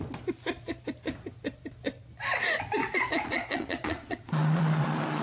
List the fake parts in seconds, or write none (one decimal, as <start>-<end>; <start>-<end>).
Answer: 2.8-5.2